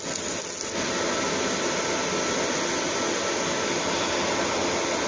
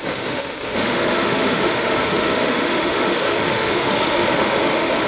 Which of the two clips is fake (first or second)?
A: second